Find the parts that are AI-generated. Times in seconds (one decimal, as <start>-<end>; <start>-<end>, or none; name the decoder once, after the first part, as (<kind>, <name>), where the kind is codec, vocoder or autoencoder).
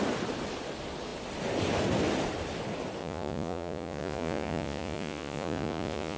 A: 3.0-6.2 (vocoder, Vocos)